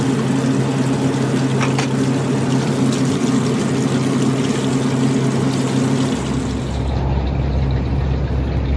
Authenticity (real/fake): real